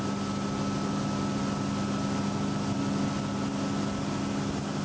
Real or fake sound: real